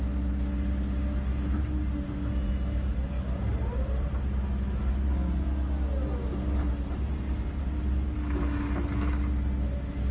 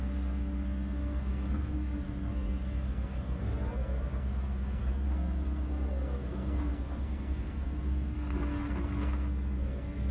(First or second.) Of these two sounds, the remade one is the second